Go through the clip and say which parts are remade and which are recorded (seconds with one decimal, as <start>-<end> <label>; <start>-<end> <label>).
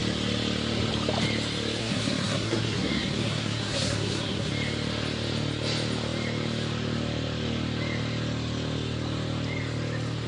0.0-1.8 recorded; 1.8-4.5 remade; 4.5-10.3 recorded